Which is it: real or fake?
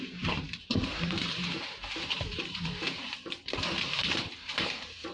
fake